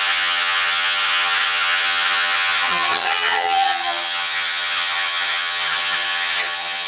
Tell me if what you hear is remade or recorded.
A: remade